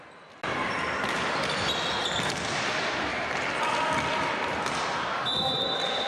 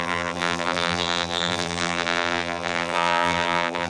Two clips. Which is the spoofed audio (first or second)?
second